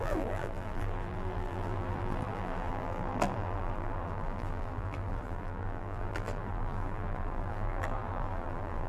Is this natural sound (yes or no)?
no